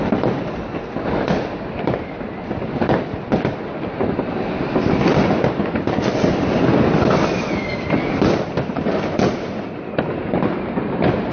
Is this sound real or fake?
real